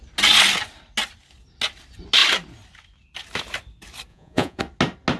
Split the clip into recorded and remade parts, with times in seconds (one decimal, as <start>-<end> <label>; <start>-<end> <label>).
0.0-4.1 recorded; 4.1-4.6 remade; 4.6-5.2 recorded